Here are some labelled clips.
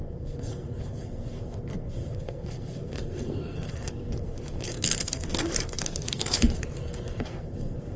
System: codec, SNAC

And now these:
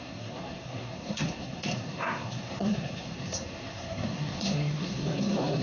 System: codec, SNAC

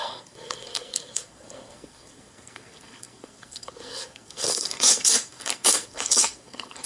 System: codec, SNAC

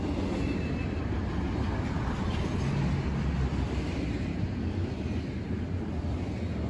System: none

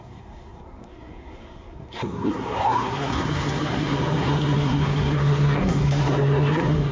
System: codec, SNAC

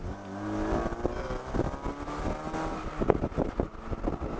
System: none